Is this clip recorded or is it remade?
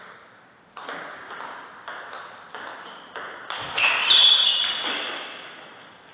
recorded